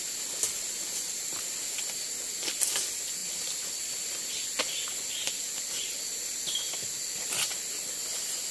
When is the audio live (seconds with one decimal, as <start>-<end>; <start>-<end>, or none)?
0.0-3.2; 4.3-8.5